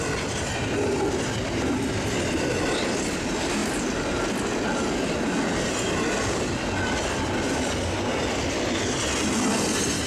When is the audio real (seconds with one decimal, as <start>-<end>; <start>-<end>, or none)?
0.0-10.1